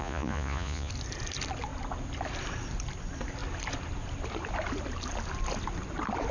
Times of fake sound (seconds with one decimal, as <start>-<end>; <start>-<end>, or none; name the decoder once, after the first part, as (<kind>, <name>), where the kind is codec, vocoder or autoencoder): 0.0-0.9 (vocoder, Vocos)